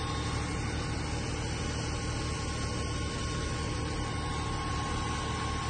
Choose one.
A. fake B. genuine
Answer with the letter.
B